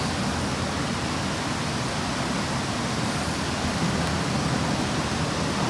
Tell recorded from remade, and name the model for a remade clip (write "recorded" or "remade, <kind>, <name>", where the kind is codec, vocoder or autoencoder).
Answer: recorded